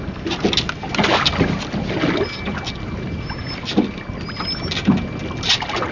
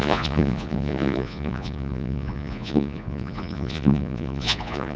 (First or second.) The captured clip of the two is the first